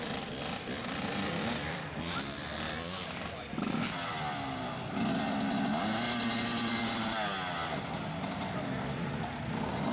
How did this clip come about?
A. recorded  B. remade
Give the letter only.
A